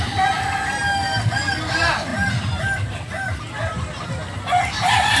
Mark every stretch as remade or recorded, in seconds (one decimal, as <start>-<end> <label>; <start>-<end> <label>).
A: 0.0-5.2 recorded